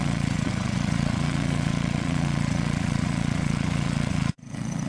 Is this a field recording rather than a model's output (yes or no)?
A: no